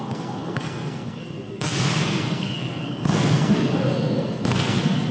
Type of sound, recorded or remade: remade